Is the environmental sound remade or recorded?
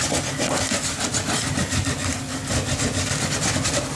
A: recorded